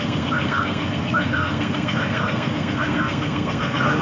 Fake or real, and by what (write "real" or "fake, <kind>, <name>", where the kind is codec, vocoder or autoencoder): fake, codec, SNAC